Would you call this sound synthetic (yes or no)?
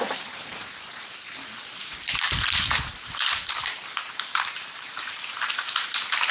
yes